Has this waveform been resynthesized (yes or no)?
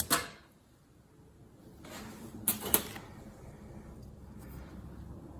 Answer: no